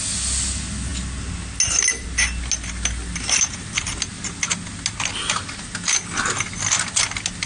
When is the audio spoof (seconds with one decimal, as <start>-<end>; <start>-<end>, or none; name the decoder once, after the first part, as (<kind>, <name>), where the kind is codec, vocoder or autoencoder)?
none